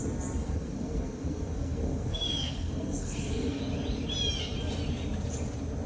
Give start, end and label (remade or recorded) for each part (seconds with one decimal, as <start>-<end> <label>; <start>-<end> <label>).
0.0-0.4 recorded; 0.4-3.6 remade; 3.6-5.9 recorded